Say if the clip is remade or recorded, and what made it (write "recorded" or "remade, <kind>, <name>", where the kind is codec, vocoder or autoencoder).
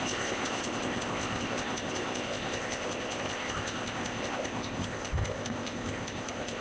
remade, codec, ZipCodec